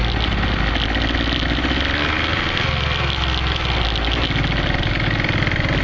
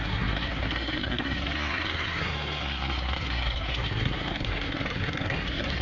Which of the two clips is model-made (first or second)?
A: second